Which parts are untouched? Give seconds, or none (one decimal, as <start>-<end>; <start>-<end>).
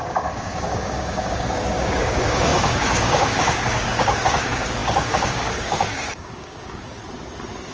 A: 7.0-7.7